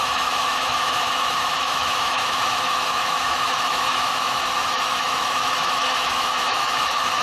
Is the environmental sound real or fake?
fake